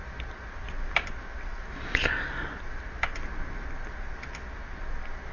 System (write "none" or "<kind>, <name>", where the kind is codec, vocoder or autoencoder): none